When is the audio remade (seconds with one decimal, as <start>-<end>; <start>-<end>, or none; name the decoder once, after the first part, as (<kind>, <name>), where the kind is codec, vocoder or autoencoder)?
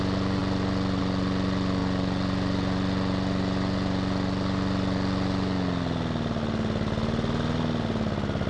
none